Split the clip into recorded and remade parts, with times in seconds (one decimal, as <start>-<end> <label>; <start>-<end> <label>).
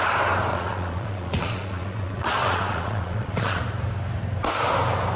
0.0-0.5 recorded; 0.5-3.6 remade; 3.6-5.2 recorded